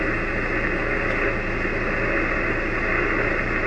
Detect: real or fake real